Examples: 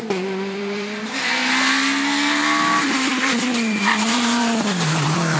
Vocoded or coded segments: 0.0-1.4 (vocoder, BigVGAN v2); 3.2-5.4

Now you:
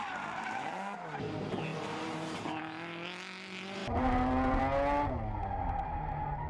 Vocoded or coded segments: 3.8-4.6 (vocoder, BigVGAN v2)